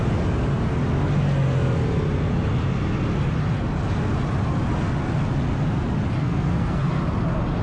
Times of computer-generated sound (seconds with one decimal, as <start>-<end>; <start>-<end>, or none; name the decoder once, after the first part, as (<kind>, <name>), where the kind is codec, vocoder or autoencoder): 6.2-6.9 (codec, SNAC)